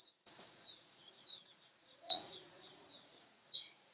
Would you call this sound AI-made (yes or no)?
yes